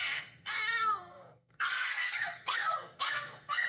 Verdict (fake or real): fake